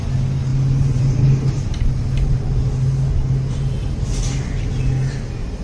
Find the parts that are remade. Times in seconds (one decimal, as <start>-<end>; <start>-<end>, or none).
none